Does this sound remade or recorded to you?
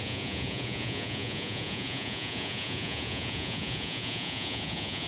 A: remade